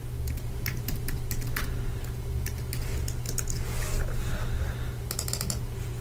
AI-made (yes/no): no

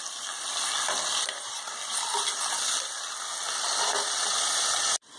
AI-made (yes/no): no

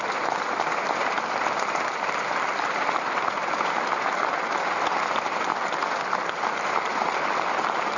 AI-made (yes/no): no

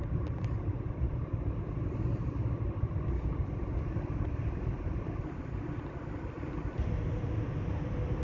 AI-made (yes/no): yes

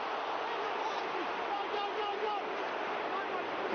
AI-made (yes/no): yes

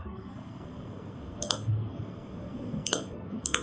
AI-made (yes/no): yes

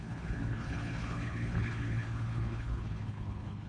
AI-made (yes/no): yes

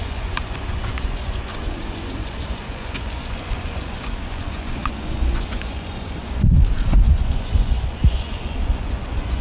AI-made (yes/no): yes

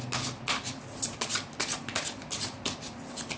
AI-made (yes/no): no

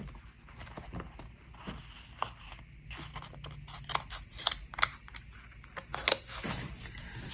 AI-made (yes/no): no